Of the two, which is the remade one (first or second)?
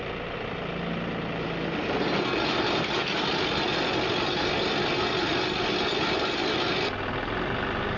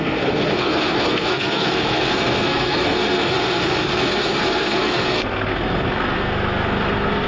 second